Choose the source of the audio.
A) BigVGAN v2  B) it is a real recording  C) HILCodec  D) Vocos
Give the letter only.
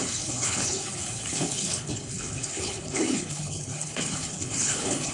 C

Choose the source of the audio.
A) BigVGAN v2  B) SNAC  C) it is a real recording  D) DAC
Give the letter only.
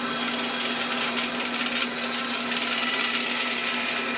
C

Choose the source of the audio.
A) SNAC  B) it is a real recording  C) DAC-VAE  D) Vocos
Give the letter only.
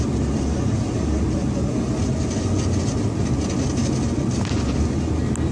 B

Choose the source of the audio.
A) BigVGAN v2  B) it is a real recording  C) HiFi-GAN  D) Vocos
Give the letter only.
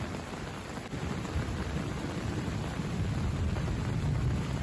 A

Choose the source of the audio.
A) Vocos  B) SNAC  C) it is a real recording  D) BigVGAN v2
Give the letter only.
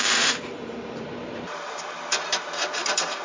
D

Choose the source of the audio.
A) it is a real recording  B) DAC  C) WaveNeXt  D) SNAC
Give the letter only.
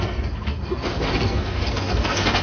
D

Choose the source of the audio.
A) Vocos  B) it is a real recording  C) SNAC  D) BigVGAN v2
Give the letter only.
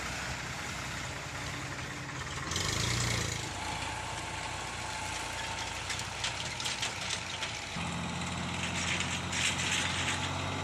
B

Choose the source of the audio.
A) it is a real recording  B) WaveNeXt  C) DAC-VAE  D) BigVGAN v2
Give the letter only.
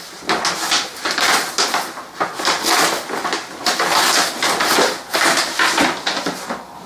A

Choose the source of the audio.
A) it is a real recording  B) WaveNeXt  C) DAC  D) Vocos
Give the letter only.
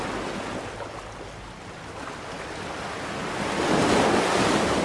A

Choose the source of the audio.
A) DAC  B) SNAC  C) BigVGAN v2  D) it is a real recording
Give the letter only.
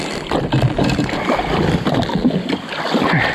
D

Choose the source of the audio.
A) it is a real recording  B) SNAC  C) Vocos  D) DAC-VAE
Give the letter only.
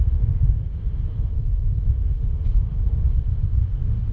D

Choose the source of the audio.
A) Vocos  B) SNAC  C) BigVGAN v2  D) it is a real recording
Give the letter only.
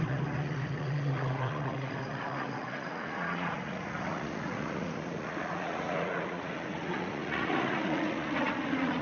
A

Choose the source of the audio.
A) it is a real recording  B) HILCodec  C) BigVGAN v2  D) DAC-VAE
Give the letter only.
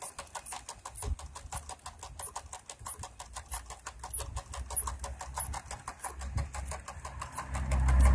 A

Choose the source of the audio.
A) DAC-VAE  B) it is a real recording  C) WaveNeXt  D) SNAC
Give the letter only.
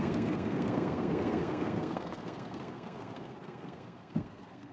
D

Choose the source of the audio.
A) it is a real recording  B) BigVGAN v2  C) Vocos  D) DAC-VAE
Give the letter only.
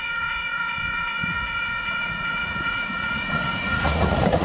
C